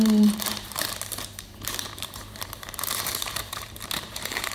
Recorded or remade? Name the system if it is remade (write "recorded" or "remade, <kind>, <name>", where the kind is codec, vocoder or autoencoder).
remade, vocoder, BigVGAN v2